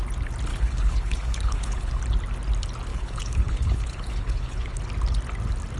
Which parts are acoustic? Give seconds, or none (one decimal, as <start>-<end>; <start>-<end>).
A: 0.0-0.5; 2.0-2.9; 4.8-5.8